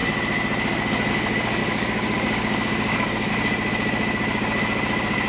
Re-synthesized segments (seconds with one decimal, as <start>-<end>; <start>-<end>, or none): 1.6-3.3